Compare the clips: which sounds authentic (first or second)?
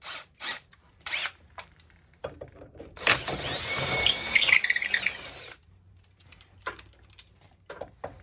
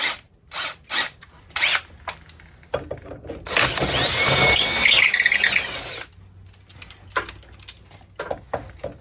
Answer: second